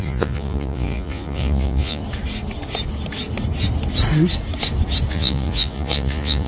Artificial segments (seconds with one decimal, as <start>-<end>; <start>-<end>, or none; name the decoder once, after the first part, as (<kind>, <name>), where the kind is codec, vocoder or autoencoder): 0.0-2.0 (vocoder, Vocos); 5.1-6.5